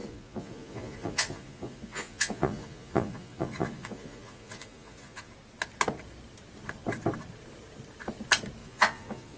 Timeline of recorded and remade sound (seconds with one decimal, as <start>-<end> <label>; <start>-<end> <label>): 0.0-5.3 remade; 5.3-8.6 recorded; 8.6-9.4 remade